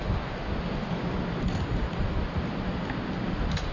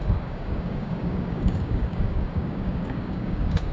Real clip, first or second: first